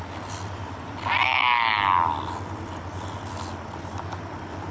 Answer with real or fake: real